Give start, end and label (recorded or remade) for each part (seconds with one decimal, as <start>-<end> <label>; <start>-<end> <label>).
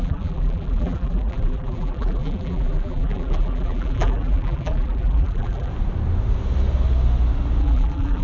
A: 0.0-5.7 remade; 5.7-7.6 recorded; 7.6-8.2 remade